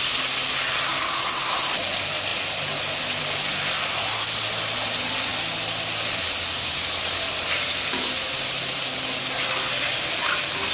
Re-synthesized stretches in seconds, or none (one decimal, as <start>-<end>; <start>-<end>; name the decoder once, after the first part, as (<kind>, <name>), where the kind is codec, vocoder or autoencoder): none